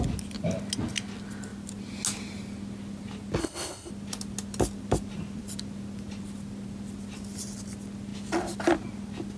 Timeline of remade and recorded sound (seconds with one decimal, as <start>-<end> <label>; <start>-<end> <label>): 0.0-3.4 recorded; 3.4-3.9 remade; 3.9-9.4 recorded